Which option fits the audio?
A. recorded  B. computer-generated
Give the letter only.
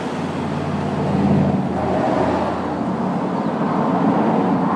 A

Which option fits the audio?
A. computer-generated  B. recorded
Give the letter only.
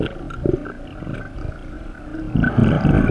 B